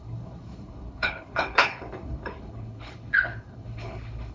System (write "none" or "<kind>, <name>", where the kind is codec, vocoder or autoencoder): codec, HILCodec